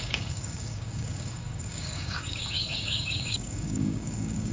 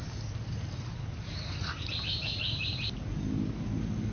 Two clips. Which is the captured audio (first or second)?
second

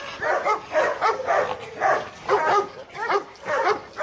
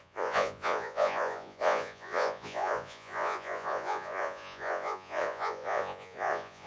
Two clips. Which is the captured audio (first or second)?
first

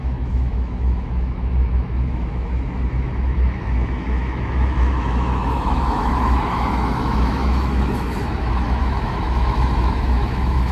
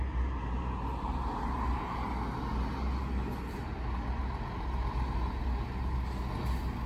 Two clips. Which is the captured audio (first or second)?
second